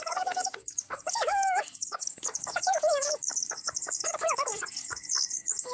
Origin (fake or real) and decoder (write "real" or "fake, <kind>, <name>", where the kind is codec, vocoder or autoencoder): fake, codec, DAC